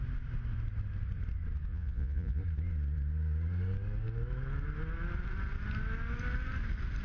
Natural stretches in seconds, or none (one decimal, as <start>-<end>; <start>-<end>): 0.0-1.7; 2.4-7.0